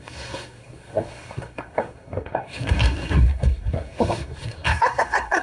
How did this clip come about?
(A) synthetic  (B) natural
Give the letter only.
A